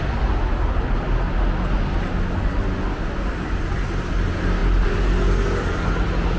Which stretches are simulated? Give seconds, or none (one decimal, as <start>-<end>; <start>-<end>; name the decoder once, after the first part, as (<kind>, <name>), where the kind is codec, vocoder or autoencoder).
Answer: none